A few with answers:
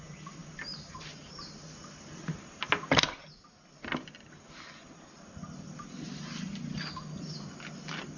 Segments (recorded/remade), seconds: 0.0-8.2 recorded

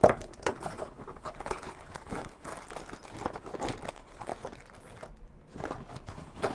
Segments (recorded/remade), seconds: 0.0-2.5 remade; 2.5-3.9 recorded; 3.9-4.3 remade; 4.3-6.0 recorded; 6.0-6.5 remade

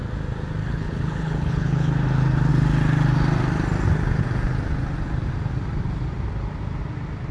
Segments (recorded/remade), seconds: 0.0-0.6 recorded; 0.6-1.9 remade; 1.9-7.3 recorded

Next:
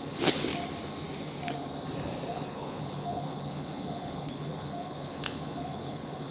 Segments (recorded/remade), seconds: 0.0-0.5 remade; 0.5-2.3 recorded; 2.3-6.3 remade